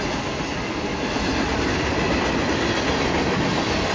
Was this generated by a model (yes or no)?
no